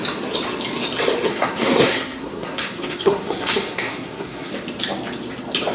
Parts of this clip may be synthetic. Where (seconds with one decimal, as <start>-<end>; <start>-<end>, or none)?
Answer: 1.3-4.5